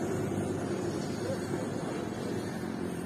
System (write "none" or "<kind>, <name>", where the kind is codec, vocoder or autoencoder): vocoder, BigVGAN v2